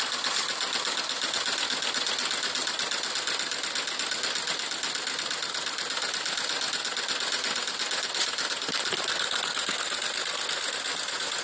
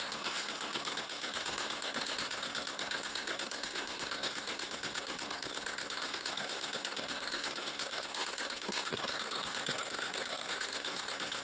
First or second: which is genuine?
first